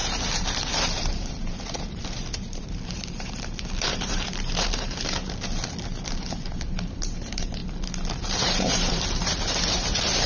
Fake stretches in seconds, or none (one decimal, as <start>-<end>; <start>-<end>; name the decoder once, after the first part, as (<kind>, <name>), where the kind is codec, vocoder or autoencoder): 0.0-7.6 (vocoder, BigVGAN v2); 8.2-10.3